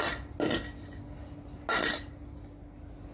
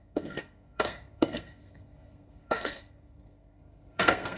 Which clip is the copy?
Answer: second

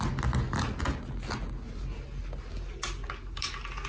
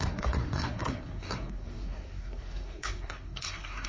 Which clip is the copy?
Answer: second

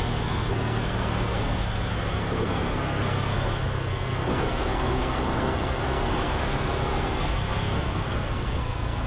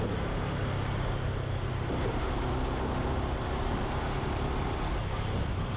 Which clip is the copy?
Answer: first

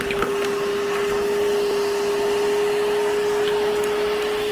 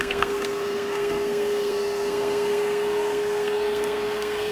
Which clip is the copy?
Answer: second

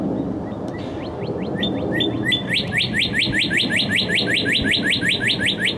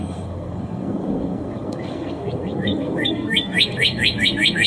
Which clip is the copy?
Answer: second